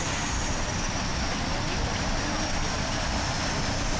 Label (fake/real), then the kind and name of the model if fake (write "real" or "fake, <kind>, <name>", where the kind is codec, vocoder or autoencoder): real